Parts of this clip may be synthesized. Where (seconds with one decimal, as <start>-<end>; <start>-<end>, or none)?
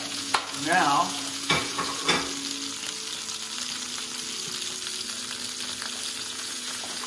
0.0-2.0; 6.2-7.1